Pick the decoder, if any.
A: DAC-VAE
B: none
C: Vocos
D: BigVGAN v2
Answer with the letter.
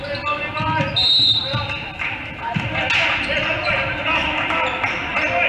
B